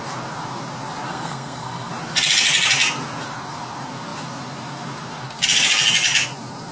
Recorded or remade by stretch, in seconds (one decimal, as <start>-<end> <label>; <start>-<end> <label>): 0.0-1.1 recorded; 1.1-1.9 remade; 1.9-6.7 recorded